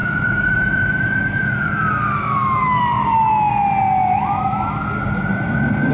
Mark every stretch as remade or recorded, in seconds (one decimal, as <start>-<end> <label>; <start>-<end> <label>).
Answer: 0.0-3.5 remade; 3.5-4.0 recorded; 4.0-4.9 remade; 4.9-5.9 recorded